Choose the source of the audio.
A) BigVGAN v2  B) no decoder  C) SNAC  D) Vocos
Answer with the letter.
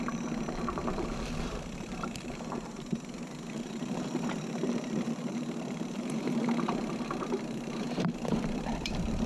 A